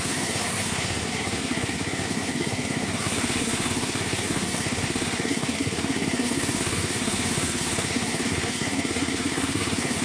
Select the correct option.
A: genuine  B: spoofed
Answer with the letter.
B